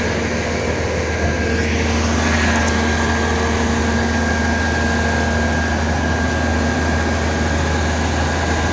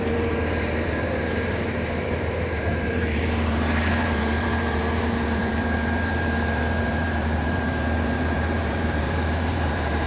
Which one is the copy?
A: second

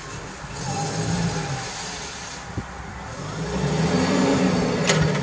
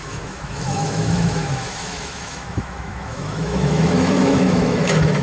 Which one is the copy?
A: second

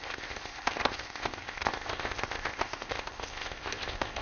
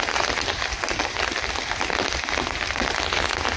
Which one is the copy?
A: first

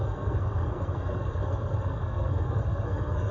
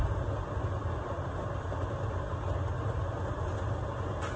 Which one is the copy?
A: first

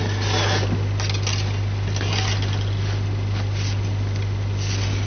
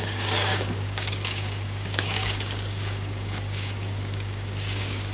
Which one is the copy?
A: second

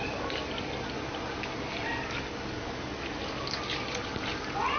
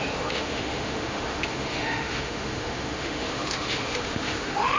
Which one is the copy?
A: second